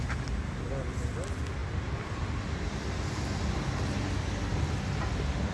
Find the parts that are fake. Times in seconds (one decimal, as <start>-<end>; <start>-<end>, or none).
1.6-2.9

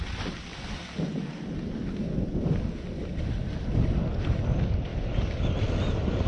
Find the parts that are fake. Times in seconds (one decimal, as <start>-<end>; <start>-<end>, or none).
4.9-5.7

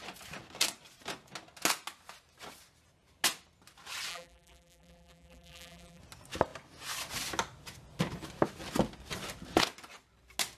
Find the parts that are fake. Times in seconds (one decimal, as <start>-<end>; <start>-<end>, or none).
4.1-6.0